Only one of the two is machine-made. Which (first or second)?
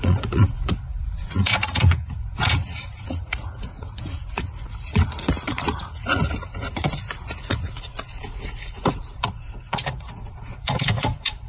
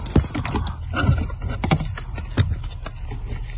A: first